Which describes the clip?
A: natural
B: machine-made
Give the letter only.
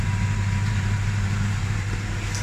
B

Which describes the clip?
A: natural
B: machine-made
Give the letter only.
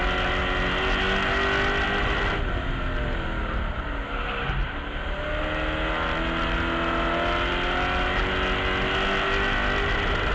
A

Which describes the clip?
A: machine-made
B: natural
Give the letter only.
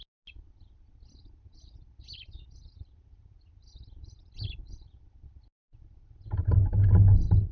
B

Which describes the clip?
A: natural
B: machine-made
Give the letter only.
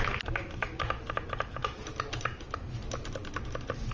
A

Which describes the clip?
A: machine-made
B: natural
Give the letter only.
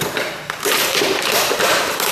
A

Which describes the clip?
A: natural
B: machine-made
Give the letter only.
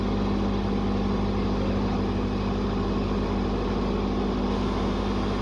A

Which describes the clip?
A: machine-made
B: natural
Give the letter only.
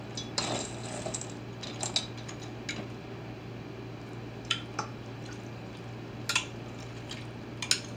B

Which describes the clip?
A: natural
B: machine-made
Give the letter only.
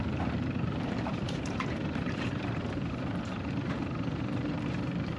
B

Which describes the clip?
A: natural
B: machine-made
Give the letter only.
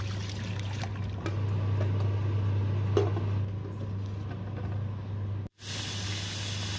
A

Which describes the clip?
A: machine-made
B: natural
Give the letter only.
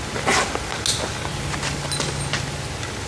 B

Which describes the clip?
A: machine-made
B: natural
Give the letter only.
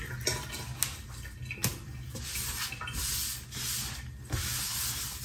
B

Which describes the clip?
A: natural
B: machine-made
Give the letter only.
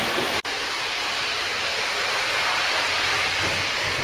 B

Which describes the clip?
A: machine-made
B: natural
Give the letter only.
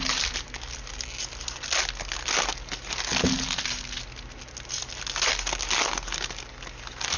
B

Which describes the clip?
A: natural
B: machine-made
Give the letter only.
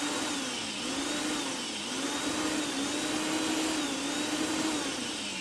A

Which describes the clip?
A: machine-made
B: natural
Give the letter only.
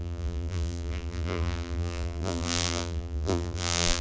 A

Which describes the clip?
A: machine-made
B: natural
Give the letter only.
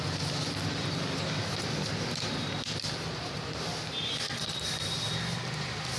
A